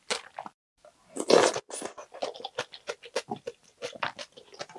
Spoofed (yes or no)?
no